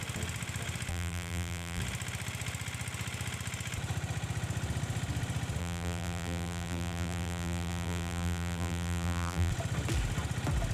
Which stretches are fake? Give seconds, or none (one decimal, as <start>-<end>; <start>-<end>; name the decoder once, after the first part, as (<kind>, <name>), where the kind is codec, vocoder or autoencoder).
0.9-1.8 (vocoder, BigVGAN v2); 5.6-9.5